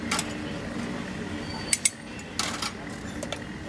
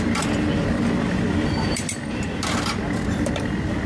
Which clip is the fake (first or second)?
second